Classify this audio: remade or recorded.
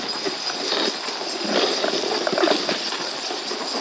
recorded